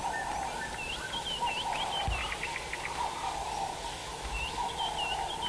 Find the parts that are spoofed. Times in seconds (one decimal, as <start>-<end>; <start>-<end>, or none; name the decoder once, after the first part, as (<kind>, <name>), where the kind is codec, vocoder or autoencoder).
4.0-4.7 (autoencoder, DAC-VAE)